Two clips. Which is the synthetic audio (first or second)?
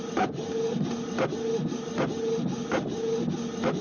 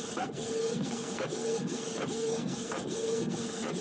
second